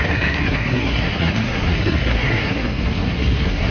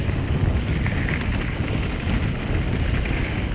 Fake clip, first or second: first